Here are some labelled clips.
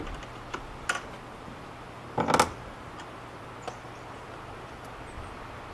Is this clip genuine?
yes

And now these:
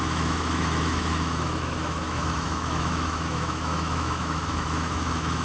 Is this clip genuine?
no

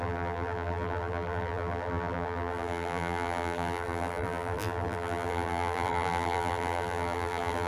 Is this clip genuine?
no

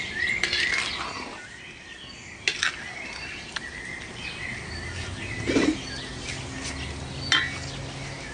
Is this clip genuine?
yes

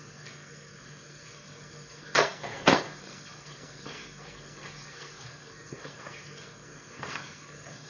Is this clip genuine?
no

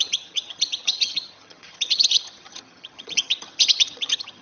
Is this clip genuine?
no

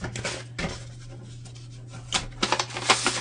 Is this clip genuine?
yes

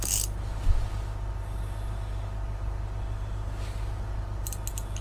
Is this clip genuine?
yes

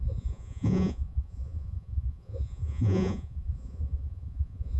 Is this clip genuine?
no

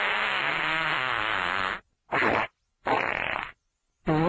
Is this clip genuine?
yes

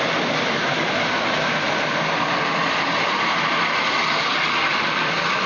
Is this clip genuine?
yes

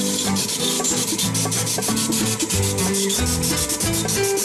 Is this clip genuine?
yes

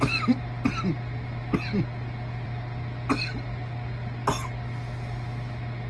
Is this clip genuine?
yes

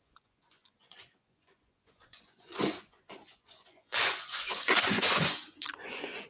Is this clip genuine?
no